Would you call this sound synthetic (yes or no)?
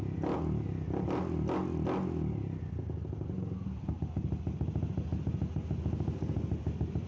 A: no